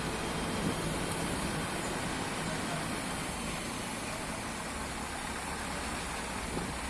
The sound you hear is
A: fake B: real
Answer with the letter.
B